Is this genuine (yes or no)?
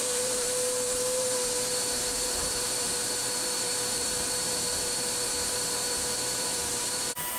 no